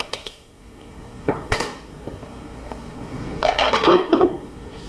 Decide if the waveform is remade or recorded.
remade